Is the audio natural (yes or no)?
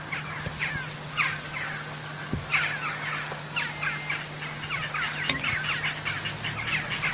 yes